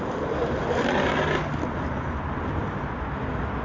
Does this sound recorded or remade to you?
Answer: recorded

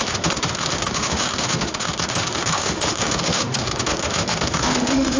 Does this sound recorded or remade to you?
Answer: remade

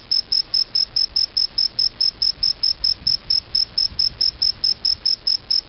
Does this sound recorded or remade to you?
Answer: recorded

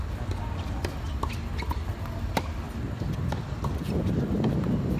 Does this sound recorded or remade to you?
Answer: recorded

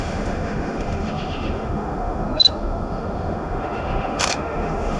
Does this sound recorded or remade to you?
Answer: remade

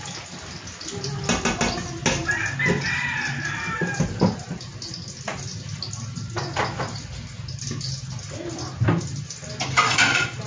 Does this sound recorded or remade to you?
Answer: recorded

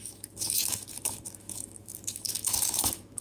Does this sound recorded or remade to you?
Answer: remade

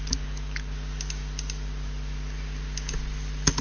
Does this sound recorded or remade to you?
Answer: recorded